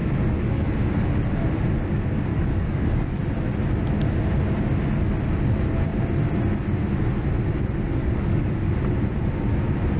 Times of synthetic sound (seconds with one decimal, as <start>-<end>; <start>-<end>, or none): 0.0-0.7; 2.3-3.2; 8.0-8.7